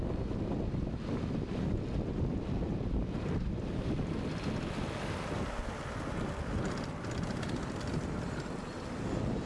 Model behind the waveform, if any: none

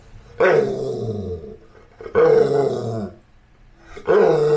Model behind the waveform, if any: none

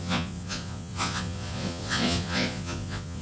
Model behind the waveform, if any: vocoder, Vocos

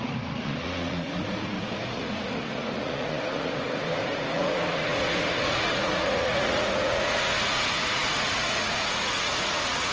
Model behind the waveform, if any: vocoder, Vocos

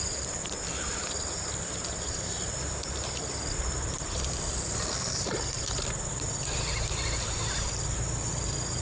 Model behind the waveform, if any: none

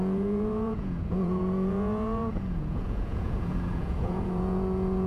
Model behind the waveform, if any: vocoder, Vocos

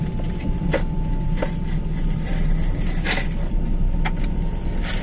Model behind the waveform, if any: none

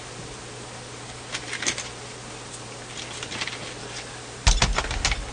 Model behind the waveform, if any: none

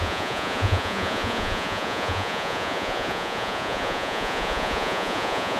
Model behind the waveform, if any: vocoder, Vocos